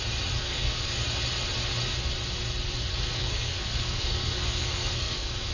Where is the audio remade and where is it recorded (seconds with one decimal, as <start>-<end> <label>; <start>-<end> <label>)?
0.0-0.4 recorded; 0.4-0.9 remade; 0.9-2.9 recorded; 2.9-5.5 remade